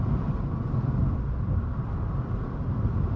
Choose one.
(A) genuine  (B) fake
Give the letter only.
B